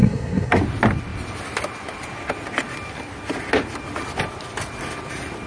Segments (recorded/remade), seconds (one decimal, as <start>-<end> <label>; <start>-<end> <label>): 0.0-0.6 remade; 0.6-5.5 recorded